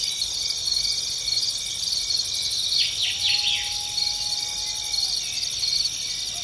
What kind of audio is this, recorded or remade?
recorded